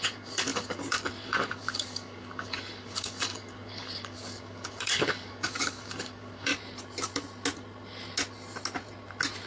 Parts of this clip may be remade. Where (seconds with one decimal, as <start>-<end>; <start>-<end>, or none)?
0.0-6.5